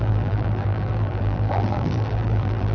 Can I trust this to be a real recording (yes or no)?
no